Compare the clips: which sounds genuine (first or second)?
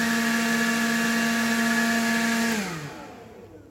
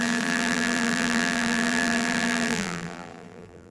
first